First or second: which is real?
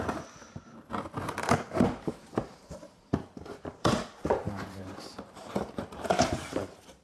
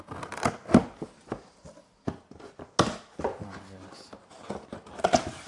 second